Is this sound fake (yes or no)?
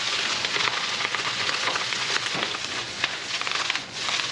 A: yes